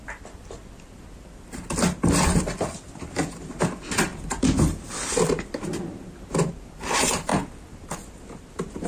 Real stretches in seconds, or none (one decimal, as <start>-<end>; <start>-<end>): 0.0-4.1; 5.8-7.3; 8.1-8.9